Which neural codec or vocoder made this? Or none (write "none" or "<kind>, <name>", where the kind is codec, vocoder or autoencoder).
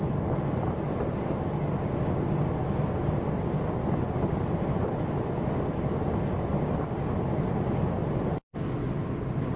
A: none